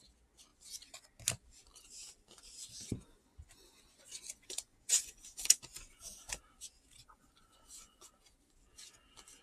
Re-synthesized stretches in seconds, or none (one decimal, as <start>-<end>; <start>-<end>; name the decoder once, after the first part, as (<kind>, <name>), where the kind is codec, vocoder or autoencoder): 3.2-6.4 (vocoder, Vocos); 7.0-8.1